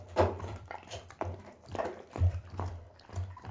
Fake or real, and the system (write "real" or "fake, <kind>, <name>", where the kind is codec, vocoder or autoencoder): fake, vocoder, BigVGAN v2